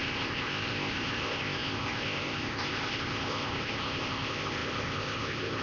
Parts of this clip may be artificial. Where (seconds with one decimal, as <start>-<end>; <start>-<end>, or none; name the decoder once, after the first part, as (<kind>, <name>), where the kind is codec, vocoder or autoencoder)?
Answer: 0.0-5.6 (codec, ZipCodec)